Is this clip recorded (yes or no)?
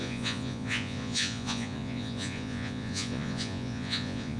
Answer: no